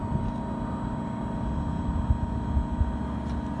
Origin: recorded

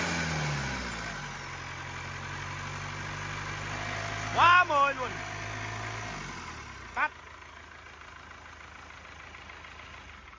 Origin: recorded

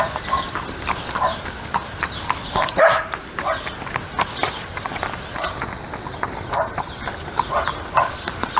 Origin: recorded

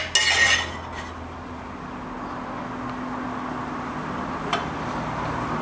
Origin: recorded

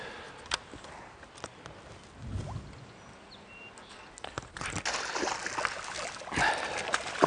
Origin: recorded